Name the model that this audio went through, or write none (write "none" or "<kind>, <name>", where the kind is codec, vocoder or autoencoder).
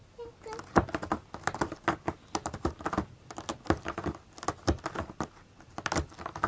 none